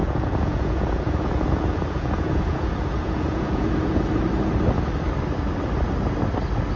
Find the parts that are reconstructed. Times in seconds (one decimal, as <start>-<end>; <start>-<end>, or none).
0.0-4.1